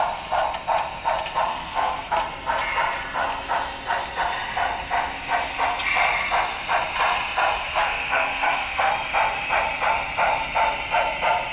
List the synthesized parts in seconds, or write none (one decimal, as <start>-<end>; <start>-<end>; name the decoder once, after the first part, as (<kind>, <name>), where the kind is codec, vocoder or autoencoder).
1.5-2.2 (codec, SNAC); 7.6-8.9